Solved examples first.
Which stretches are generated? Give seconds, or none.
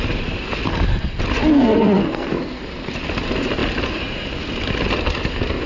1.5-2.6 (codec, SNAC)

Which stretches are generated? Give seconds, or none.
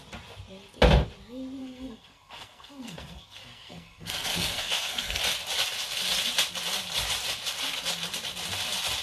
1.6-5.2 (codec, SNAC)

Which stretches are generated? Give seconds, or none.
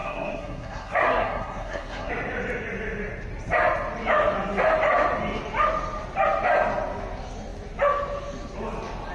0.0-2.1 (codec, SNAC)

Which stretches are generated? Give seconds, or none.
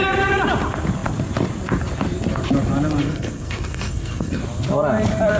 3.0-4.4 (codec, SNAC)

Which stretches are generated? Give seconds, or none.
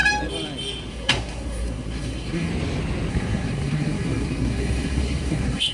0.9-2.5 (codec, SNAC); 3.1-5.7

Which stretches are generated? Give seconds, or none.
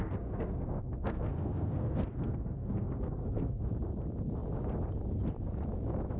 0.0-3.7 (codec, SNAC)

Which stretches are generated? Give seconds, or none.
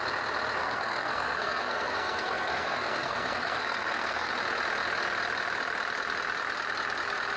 0.6-4.3 (codec, SNAC)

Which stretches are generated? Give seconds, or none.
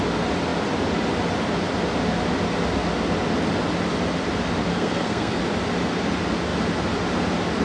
4.7-5.4 (codec, SNAC)